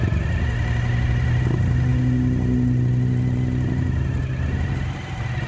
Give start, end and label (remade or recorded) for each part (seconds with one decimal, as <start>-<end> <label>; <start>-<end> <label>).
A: 0.0-5.5 recorded